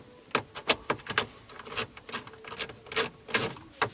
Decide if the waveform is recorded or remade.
recorded